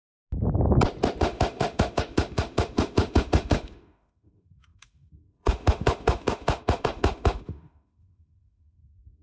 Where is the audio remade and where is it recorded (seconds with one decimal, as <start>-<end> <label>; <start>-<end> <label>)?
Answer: 0.0-1.2 recorded; 1.2-9.2 remade